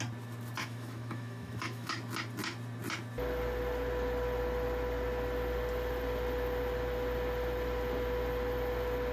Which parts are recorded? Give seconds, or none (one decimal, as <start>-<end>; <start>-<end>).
0.0-0.6; 1.9-9.1